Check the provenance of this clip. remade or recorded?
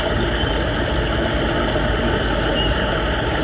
recorded